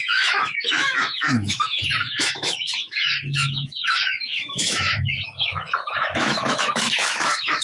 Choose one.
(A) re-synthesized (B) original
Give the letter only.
A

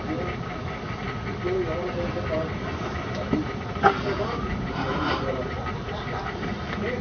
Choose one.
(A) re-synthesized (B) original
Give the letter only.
B